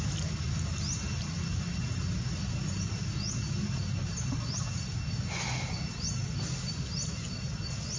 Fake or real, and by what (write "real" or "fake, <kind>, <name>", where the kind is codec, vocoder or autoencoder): real